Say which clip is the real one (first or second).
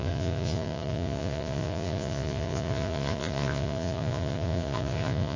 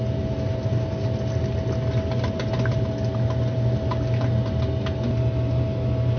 second